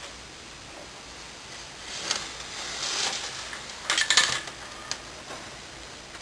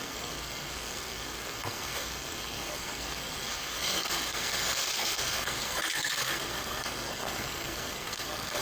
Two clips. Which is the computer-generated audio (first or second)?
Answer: second